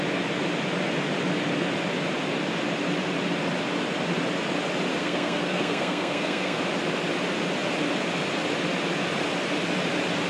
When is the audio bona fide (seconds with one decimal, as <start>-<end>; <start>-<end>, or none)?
0.0-5.0; 6.6-10.3